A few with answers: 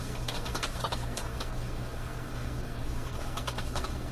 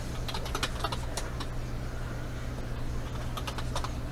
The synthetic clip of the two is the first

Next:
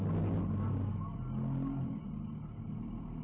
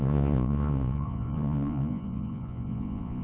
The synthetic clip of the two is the second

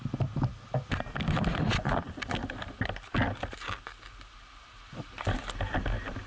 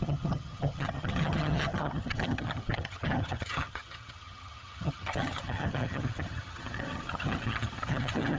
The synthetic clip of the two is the second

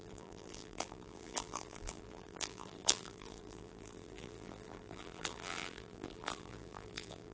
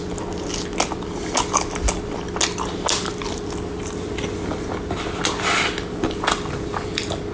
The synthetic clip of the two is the first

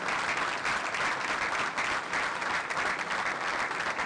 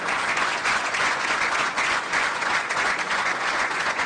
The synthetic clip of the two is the second